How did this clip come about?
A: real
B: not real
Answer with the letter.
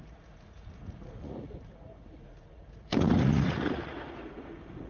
B